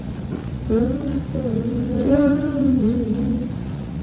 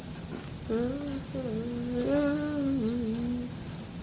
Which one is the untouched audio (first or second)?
second